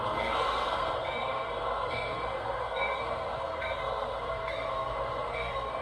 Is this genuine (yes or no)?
no